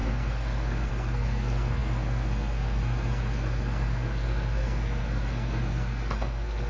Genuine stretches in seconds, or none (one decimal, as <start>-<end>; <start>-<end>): none